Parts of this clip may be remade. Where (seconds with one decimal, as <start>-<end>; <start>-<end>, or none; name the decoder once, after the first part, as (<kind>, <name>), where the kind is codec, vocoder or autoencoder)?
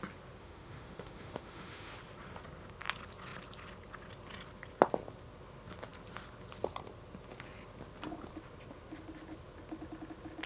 0.4-1.9 (autoencoder, DAC-VAE)